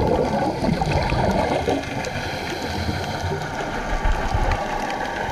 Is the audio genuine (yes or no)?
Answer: yes